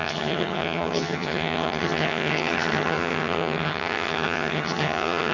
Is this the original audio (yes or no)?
no